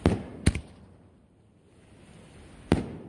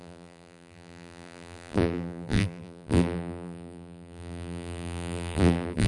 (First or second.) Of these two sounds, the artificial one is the second